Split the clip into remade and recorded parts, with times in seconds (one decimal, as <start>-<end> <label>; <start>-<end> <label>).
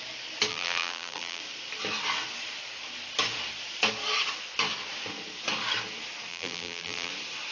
0.0-0.5 recorded; 0.5-1.4 remade; 1.4-6.3 recorded; 6.3-7.1 remade; 7.1-7.5 recorded